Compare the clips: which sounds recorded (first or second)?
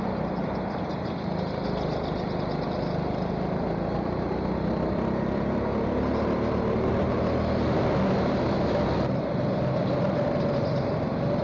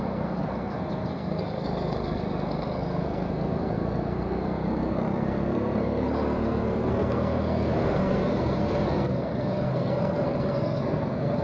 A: first